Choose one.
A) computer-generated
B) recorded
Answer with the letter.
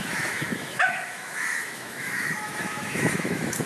A